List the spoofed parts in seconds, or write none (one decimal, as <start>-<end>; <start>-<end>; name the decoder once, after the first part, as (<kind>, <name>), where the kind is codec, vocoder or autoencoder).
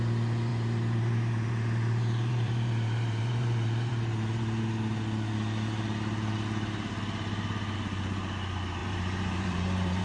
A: 0.5-4.4 (vocoder, BigVGAN v2); 8.8-10.0